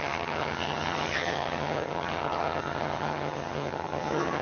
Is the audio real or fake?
fake